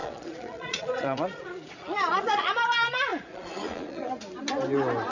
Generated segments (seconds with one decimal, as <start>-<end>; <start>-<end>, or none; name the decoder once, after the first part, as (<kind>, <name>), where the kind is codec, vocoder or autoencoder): 0.0-2.5 (vocoder, Vocos); 3.1-4.1